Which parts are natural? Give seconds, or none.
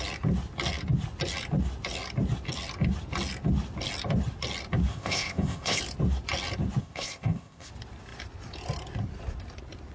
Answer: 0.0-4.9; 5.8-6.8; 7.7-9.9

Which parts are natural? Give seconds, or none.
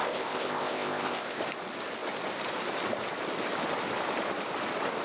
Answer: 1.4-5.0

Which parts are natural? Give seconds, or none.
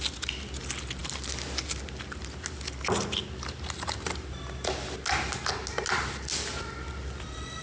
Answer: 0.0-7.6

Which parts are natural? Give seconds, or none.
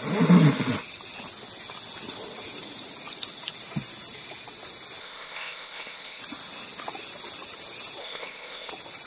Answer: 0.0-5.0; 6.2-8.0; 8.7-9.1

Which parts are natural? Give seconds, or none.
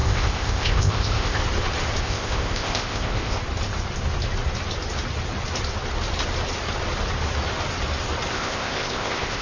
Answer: 1.4-2.0; 3.4-8.3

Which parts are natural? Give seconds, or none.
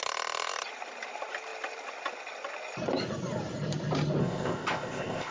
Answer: 0.0-4.2